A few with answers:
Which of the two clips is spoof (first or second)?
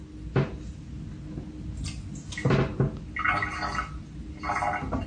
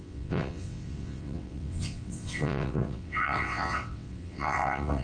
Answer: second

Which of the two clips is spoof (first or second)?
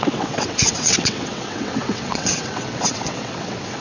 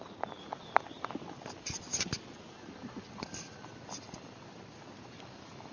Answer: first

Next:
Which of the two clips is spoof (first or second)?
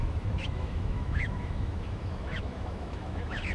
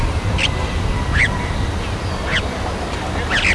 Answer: first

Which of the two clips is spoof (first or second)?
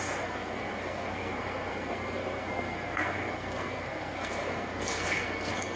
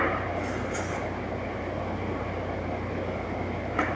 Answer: first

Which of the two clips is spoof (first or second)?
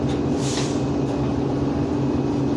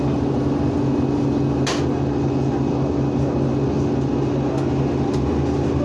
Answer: first